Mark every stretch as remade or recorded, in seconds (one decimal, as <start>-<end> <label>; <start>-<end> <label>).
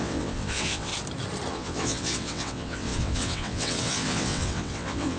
0.0-0.9 remade; 0.9-1.5 recorded; 1.5-5.2 remade